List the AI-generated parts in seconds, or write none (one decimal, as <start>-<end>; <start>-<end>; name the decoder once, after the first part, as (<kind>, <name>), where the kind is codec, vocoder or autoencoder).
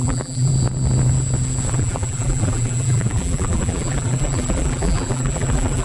0.0-0.5 (vocoder, BigVGAN v2); 1.7-5.8